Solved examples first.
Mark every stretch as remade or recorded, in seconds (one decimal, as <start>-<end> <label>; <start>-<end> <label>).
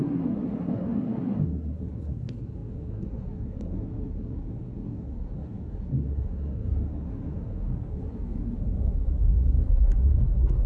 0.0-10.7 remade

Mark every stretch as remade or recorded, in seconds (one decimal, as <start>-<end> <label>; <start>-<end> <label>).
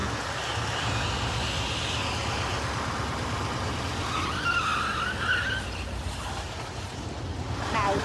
0.0-2.5 recorded; 2.5-3.8 remade; 3.8-8.0 recorded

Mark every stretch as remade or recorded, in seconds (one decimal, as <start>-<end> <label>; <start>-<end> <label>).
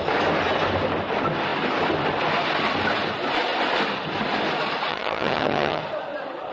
0.0-4.9 recorded; 4.9-5.8 remade; 5.8-6.5 recorded